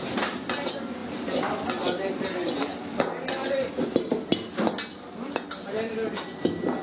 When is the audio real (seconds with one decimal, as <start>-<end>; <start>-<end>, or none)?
0.0-6.8